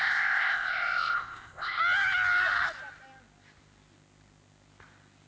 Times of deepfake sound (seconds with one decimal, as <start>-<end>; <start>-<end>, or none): 0.0-1.8